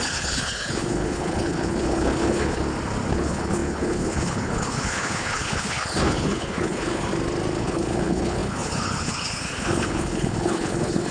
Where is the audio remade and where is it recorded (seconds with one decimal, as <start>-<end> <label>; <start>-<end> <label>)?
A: 0.0-2.6 remade; 2.6-3.1 recorded; 3.1-7.1 remade; 7.1-7.6 recorded; 7.6-11.1 remade